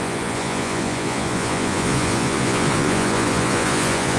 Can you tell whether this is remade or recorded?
remade